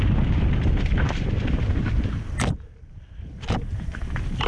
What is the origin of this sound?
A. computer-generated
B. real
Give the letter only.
B